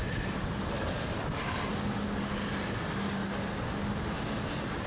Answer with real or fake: real